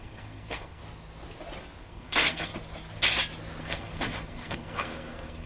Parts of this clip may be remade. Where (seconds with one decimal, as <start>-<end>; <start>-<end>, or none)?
0.0-0.8; 1.8-2.5; 3.6-5.5